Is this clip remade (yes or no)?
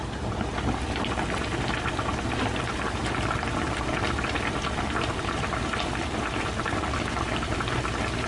yes